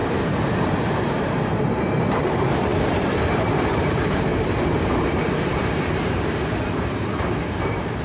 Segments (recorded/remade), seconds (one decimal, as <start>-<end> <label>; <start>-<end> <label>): 0.0-2.7 remade; 2.7-3.3 recorded; 3.3-4.3 remade; 4.3-4.9 recorded; 4.9-8.0 remade